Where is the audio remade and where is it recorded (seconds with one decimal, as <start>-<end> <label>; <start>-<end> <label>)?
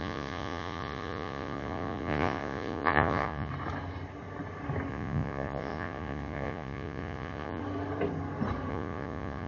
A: 0.0-3.5 remade; 3.5-4.9 recorded; 4.9-7.6 remade; 7.6-8.7 recorded; 8.7-9.5 remade